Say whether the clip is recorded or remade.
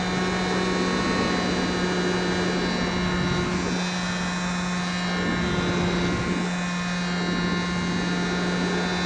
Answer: recorded